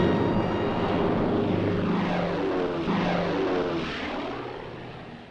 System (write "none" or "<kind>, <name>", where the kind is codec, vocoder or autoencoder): none